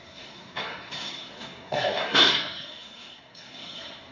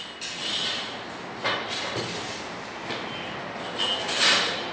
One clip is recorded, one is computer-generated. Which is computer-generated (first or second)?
first